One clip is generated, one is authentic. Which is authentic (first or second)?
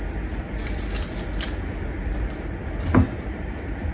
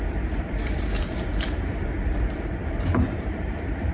first